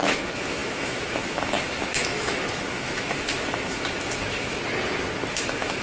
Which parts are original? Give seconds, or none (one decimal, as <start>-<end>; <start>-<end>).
4.6-5.3